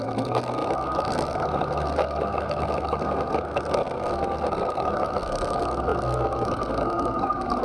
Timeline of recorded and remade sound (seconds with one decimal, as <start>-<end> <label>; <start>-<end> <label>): 0.0-7.6 remade